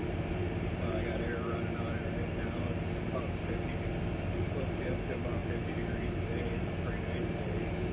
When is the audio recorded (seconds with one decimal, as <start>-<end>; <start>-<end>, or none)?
3.4-4.4